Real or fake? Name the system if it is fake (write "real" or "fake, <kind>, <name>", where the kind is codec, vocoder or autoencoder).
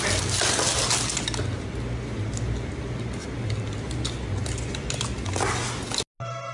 real